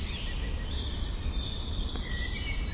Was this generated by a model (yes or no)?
no